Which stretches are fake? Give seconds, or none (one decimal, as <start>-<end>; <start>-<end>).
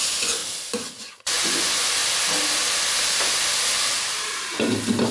0.0-0.4; 1.0-2.0